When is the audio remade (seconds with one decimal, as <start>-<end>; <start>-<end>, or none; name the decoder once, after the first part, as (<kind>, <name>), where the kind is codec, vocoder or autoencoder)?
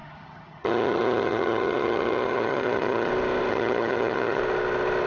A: 0.0-3.1 (vocoder, HiFi-GAN); 3.5-4.4